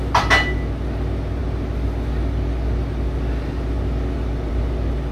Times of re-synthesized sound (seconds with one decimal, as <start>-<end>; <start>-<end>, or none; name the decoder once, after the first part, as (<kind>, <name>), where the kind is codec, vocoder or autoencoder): none